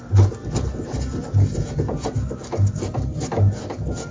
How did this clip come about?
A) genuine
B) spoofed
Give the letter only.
A